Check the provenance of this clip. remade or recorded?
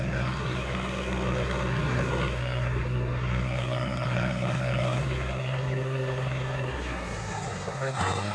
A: remade